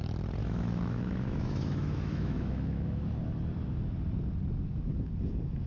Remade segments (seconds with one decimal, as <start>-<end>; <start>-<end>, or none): 0.4-3.1